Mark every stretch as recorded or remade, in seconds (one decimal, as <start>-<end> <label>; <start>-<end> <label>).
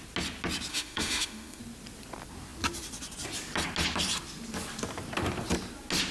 0.0-0.7 recorded; 0.7-1.6 remade; 1.6-6.1 recorded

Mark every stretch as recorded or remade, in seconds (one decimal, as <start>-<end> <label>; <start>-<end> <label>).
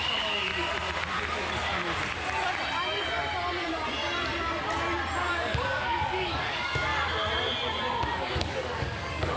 0.0-0.5 remade; 0.5-5.3 recorded; 5.3-6.9 remade; 6.9-8.2 recorded; 8.2-9.4 remade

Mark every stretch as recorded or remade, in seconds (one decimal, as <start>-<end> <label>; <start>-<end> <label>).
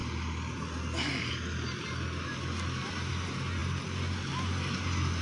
0.0-5.2 recorded